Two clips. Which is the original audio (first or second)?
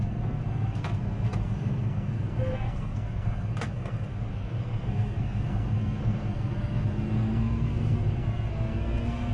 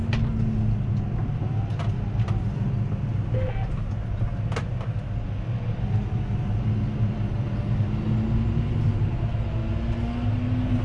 second